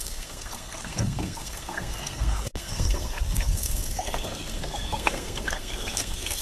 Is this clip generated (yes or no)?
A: yes